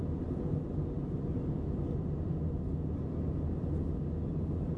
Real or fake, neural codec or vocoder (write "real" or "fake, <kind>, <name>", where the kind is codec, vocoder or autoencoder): real